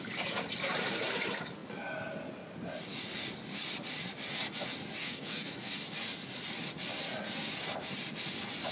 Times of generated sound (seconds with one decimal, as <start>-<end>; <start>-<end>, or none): 5.0-5.7